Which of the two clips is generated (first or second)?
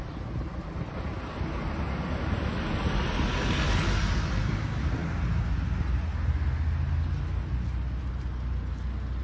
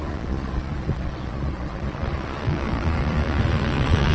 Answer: second